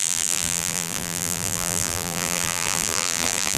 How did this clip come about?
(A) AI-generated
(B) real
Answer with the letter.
A